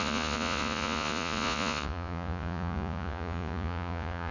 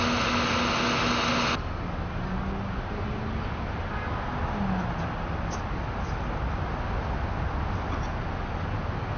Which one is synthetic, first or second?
first